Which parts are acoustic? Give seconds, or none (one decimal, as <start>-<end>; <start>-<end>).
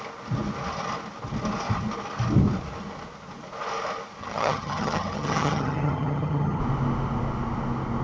0.0-4.2; 6.6-8.0